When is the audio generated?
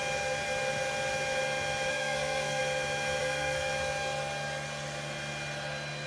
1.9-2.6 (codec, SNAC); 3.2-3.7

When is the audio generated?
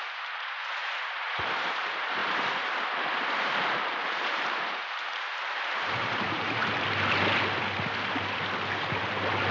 0.0-6.6 (vocoder, BigVGAN v2)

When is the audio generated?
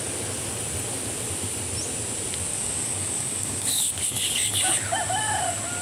2.5-4.7 (codec, DAC)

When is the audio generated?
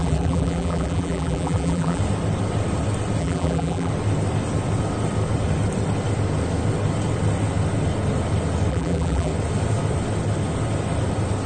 0.0-2.0 (vocoder, BigVGAN v2); 3.2-3.9; 8.7-9.3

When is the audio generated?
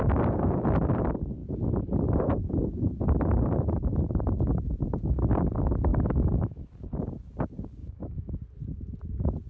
5.9-6.7 (autoencoder, DAC-VAE); 7.8-8.4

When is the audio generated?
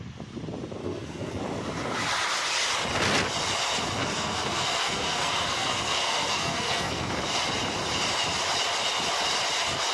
0.8-1.4 (codec, SNAC); 4.0-7.1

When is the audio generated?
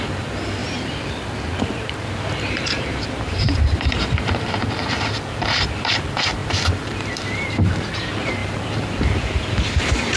0.0-0.6 (vocoder, BigVGAN v2); 1.6-10.2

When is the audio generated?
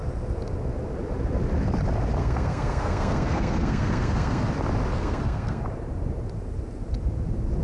2.2-4.5 (codec, SNAC); 4.9-5.6